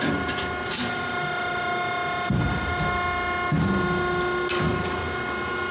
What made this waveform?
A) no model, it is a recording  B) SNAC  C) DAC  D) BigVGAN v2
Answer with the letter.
A